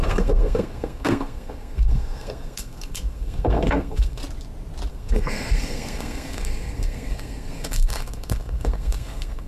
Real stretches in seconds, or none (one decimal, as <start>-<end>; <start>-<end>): 4.2-4.9